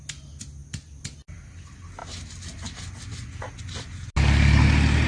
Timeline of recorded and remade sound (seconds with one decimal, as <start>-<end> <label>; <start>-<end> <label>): 0.0-5.1 recorded